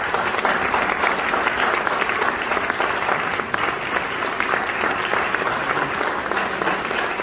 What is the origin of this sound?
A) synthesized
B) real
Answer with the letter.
B